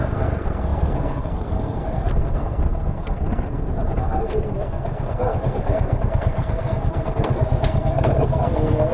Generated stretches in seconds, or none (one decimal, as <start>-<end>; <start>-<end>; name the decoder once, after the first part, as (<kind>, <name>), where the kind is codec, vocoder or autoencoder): 0.0-8.9 (codec, SNAC)